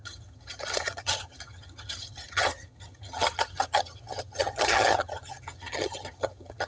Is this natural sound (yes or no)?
no